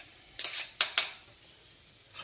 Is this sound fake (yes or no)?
no